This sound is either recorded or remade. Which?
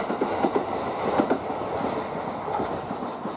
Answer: recorded